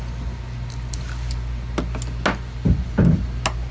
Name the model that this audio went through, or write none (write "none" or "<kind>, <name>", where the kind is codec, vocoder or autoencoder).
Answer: none